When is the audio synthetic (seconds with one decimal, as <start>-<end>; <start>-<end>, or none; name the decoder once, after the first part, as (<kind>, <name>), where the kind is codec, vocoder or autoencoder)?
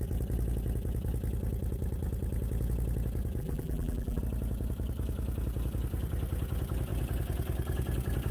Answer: 3.4-4.2 (vocoder, BigVGAN v2)